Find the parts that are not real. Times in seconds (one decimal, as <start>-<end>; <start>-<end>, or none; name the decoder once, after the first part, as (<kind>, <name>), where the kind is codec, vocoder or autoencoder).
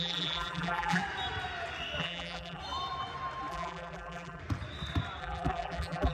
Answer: 0.0-1.0 (vocoder, BigVGAN v2); 2.0-2.6; 3.5-4.4; 5.2-6.1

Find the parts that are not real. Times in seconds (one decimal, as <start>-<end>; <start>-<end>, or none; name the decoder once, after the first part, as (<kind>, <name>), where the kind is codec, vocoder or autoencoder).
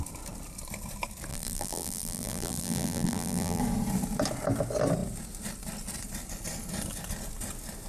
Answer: 1.3-3.6 (vocoder, BigVGAN v2)